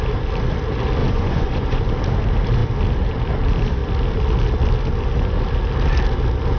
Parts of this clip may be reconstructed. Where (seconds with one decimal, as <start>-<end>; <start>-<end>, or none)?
1.0-1.8